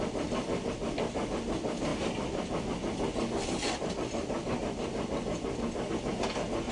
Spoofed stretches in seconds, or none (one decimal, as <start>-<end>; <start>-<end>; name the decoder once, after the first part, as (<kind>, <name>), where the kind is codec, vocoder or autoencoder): none